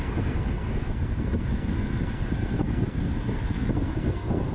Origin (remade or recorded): remade